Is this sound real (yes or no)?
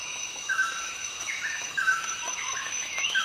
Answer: no